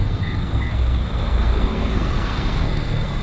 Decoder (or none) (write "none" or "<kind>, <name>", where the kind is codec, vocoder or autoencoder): codec, SNAC